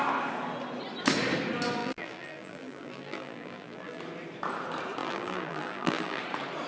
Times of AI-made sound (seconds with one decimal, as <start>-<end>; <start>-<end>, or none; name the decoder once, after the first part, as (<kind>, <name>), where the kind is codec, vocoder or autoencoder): 1.8-4.0 (vocoder, BigVGAN v2); 5.0-6.2